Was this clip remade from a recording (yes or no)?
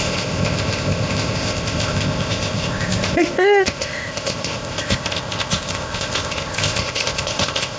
yes